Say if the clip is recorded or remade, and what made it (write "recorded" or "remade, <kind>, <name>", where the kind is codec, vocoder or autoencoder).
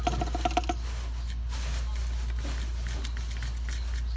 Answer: recorded